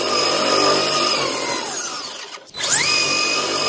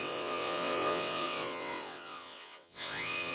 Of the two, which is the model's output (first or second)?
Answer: second